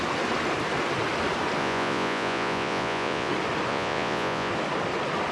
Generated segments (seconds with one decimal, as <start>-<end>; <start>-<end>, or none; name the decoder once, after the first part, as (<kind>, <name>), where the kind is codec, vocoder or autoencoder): 1.6-3.3 (vocoder, Vocos); 3.7-4.5